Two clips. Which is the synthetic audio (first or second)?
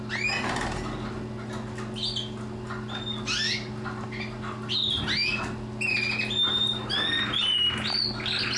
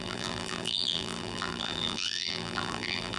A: second